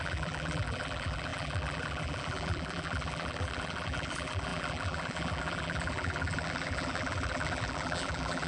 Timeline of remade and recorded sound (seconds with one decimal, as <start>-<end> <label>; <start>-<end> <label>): 0.0-8.5 remade